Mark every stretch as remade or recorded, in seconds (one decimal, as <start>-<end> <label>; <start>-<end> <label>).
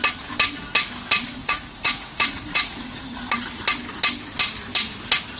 0.0-1.4 recorded; 1.4-3.0 remade; 3.0-5.4 recorded